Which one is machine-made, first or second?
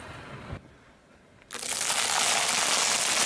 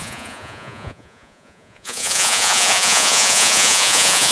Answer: second